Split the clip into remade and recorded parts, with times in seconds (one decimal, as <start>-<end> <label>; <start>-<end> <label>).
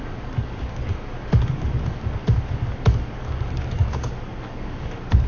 0.0-5.3 remade